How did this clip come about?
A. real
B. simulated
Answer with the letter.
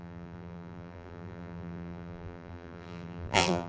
B